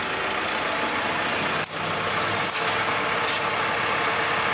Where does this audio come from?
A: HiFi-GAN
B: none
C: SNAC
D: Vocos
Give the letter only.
B